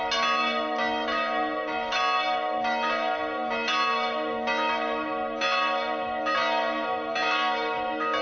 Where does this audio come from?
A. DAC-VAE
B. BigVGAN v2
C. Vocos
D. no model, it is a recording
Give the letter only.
D